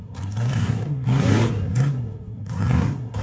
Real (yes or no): no